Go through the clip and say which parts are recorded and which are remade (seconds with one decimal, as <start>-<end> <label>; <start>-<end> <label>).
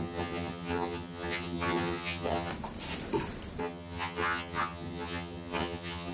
0.0-2.5 remade; 2.5-3.6 recorded; 3.6-6.1 remade